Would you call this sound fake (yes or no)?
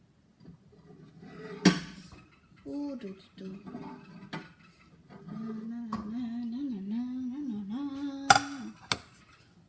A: no